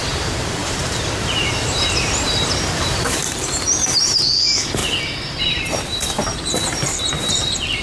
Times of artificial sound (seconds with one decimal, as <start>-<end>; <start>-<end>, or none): 0.0-4.8; 5.4-7.8